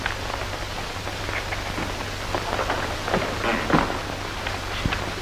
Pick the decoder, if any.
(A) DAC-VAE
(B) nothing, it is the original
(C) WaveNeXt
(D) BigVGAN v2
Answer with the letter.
B